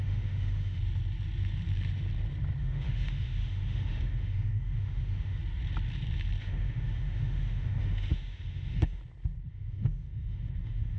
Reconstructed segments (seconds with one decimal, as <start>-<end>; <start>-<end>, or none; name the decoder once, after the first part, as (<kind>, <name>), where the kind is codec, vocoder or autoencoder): 0.0-0.8 (autoencoder, DAC-VAE); 2.6-5.4; 6.4-9.0; 9.5-11.0